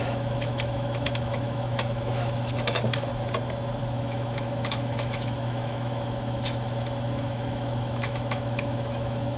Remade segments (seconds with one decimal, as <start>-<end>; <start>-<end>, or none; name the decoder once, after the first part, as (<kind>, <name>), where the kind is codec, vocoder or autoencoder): 0.0-3.1 (autoencoder, DAC-VAE); 3.8-9.4